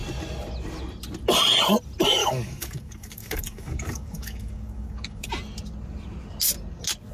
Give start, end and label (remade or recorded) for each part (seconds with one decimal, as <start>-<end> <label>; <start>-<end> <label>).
0.0-2.2 recorded; 2.2-5.3 remade; 5.3-7.1 recorded